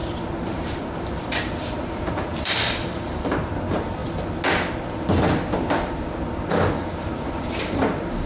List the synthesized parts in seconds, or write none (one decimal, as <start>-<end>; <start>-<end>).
0.0-4.0; 6.3-8.3